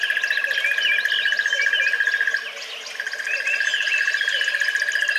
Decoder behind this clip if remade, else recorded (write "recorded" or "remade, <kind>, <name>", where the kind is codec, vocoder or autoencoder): recorded